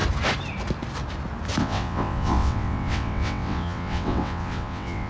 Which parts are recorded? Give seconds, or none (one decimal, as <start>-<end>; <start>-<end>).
0.0-1.6